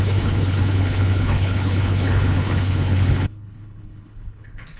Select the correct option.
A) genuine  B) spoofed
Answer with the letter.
B